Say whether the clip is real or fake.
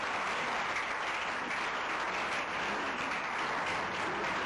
real